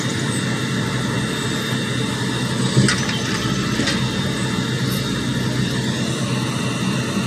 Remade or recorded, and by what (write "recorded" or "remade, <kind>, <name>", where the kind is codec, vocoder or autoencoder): recorded